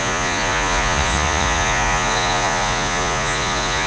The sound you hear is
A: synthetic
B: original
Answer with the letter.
A